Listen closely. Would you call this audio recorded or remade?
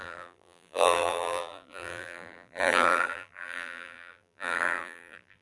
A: remade